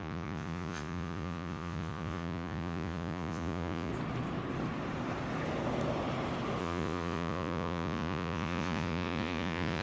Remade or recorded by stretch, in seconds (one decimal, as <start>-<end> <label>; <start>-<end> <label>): 0.0-3.9 remade; 3.9-6.6 recorded; 6.6-9.8 remade